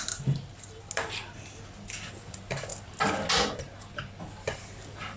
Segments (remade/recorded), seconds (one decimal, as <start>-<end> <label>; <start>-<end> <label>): 0.0-5.2 recorded